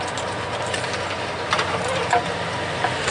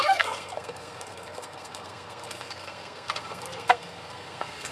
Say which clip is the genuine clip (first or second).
first